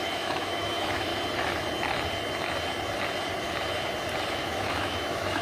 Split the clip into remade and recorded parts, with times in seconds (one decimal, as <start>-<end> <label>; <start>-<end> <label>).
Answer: 0.0-1.1 remade; 1.1-4.3 recorded; 4.3-5.4 remade